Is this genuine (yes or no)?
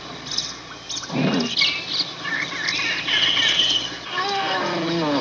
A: yes